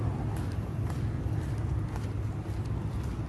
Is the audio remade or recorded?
recorded